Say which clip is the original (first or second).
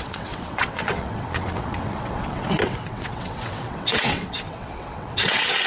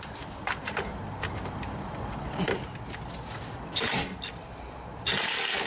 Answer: second